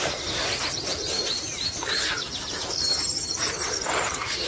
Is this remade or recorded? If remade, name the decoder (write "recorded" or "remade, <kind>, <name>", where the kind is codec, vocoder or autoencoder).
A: remade, vocoder, BigVGAN v2